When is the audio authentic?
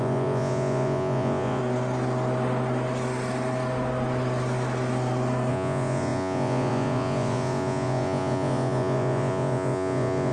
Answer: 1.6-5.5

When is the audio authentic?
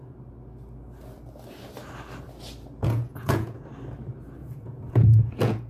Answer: 0.0-2.8; 3.6-4.4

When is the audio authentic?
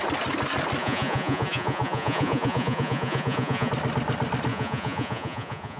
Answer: 0.0-0.8; 3.7-4.5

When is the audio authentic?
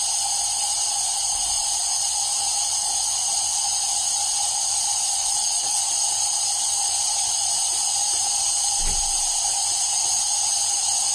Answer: 0.0-5.2; 5.8-11.1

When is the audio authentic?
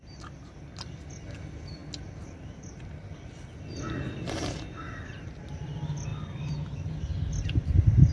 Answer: 0.0-8.1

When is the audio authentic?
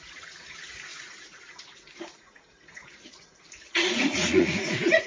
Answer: none